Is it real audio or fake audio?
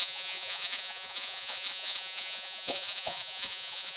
fake